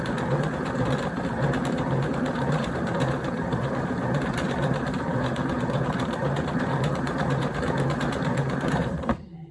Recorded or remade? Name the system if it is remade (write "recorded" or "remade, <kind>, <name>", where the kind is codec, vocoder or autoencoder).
remade, vocoder, BigVGAN v2